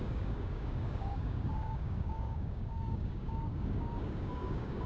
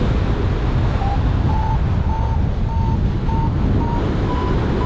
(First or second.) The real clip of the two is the second